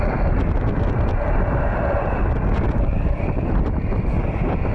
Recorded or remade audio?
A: recorded